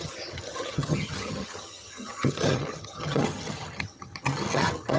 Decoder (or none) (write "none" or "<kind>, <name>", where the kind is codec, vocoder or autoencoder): vocoder, HiFi-GAN